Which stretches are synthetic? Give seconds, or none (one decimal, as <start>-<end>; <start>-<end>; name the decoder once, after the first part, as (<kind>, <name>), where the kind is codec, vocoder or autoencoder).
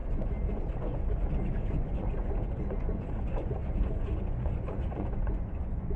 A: 0.0-6.0 (vocoder, Vocos)